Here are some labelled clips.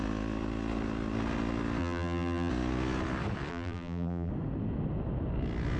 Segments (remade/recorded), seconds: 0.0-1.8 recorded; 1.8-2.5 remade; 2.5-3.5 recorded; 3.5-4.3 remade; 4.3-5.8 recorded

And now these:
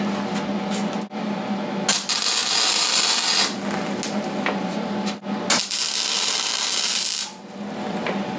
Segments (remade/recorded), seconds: 0.0-8.4 recorded

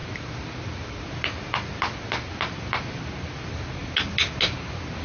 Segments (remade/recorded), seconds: 0.0-5.0 recorded

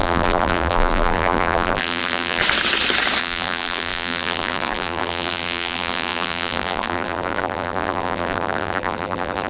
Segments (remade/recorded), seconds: 0.0-2.4 remade; 2.4-3.2 recorded; 3.2-9.5 remade

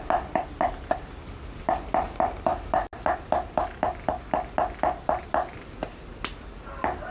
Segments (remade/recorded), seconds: 0.0-7.1 recorded